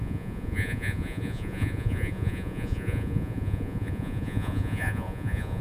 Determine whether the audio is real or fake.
fake